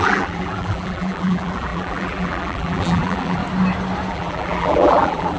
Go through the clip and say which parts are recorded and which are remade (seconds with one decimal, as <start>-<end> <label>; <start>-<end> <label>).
0.0-3.4 remade; 3.4-4.1 recorded; 4.1-5.4 remade